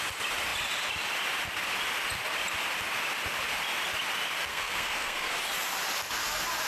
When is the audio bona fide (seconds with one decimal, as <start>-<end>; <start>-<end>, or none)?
0.0-4.5; 5.3-6.7